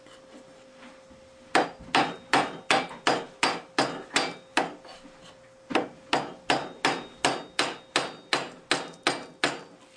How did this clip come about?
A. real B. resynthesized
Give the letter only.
A